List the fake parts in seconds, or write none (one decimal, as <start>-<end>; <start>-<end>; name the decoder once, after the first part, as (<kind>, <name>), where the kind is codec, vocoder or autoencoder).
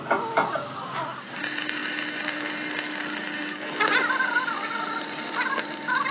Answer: none